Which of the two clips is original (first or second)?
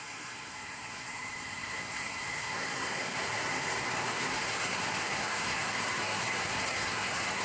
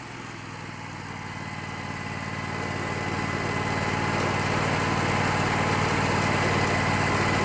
second